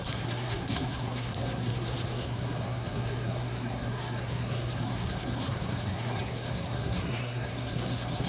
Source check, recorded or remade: remade